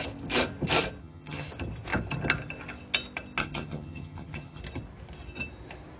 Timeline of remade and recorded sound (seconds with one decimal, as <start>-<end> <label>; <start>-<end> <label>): 0.0-1.0 recorded; 1.0-1.5 remade; 1.5-3.4 recorded; 3.4-4.6 remade; 4.6-6.0 recorded